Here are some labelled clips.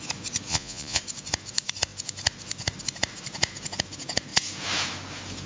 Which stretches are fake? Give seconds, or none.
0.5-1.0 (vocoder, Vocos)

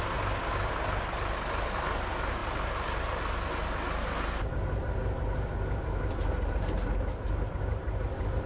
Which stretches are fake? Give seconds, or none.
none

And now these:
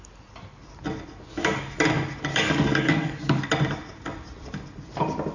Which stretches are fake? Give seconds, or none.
1.3-1.8 (codec, DAC); 2.3-3.4

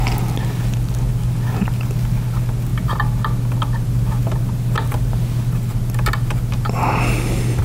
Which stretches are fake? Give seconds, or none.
none

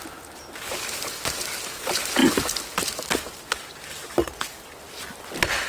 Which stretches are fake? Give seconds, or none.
none

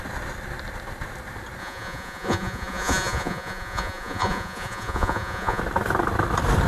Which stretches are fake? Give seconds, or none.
1.6-5.6 (vocoder, Vocos)

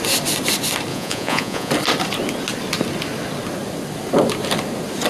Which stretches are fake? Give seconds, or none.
0.9-1.7 (vocoder, Vocos)

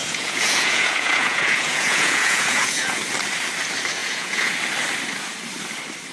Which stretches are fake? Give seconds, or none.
0.0-3.0 (vocoder, Vocos); 4.0-4.5